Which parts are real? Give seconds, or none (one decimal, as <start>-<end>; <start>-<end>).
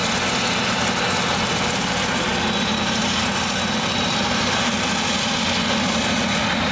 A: 0.0-6.7